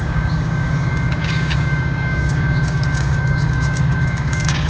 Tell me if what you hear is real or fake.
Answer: fake